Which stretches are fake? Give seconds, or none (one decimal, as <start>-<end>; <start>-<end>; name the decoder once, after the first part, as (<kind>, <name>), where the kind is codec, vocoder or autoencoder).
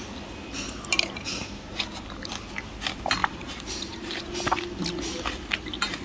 1.4-2.2 (vocoder, BigVGAN v2); 3.2-4.3